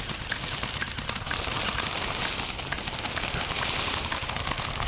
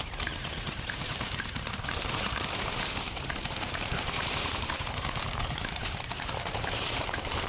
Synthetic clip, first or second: second